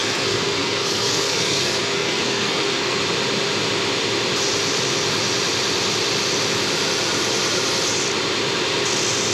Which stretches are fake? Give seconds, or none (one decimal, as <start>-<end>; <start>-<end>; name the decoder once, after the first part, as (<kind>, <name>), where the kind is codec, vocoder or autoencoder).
0.0-3.0 (codec, SNAC)